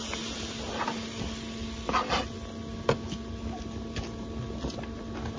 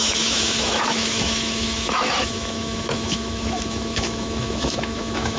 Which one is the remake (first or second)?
second